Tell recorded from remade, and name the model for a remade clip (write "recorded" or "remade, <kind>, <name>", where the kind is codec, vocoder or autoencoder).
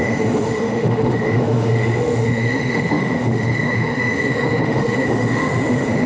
remade, autoencoder, DAC-VAE